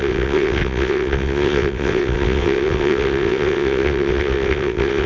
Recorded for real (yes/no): no